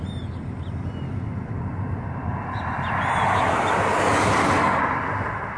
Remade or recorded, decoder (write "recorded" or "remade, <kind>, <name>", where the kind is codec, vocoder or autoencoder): recorded